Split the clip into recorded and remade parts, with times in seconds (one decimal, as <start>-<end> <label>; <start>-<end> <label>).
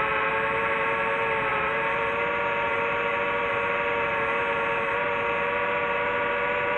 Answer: 0.0-6.8 recorded